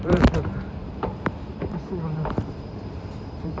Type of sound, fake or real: fake